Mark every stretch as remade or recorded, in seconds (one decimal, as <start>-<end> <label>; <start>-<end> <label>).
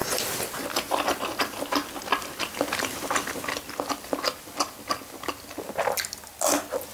0.0-6.9 recorded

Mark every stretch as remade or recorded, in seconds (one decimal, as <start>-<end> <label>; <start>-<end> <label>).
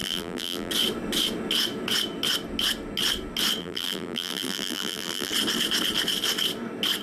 0.0-0.7 remade; 0.7-3.6 recorded; 3.6-5.3 remade; 5.3-7.0 recorded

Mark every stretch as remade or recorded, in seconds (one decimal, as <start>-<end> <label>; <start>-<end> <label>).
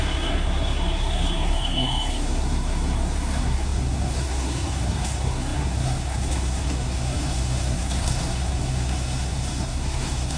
0.0-10.4 remade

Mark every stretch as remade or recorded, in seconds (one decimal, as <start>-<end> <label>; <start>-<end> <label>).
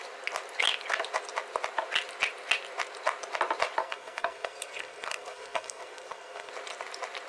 0.0-3.8 recorded; 3.8-6.5 remade; 6.5-7.3 recorded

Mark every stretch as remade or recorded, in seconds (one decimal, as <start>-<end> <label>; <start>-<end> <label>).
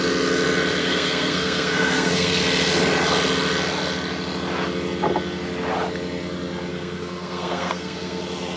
0.0-0.8 recorded; 0.8-2.4 remade; 2.4-6.7 recorded; 6.7-8.2 remade; 8.2-8.6 recorded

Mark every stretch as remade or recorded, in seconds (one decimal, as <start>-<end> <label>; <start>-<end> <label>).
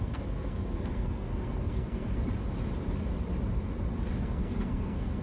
0.0-2.2 remade; 2.2-4.1 recorded; 4.1-5.2 remade